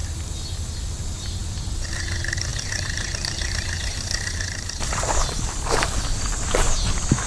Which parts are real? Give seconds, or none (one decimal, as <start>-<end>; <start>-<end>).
0.0-2.5; 6.6-7.3